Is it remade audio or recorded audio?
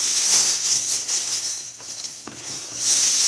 remade